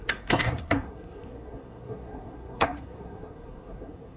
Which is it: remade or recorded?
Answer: remade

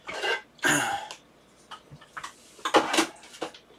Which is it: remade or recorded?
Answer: recorded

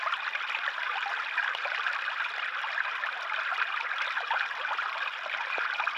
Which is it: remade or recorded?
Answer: recorded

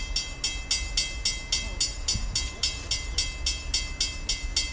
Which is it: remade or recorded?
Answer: recorded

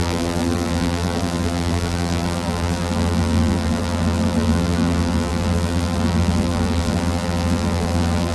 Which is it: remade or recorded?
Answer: remade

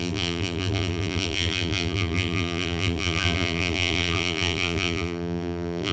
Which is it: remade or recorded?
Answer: remade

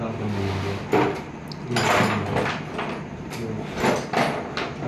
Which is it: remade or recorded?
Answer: recorded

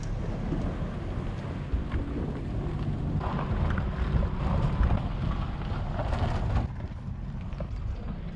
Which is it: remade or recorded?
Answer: recorded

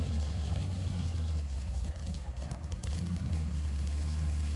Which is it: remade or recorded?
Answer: remade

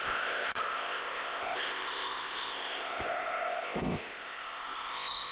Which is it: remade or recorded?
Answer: remade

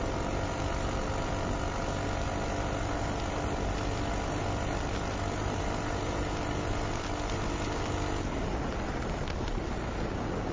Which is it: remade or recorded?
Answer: recorded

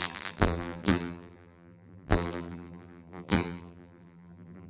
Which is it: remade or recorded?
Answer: remade